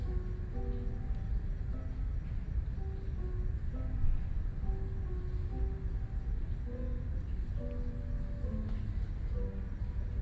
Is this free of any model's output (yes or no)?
yes